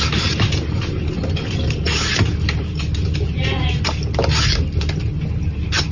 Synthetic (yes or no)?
no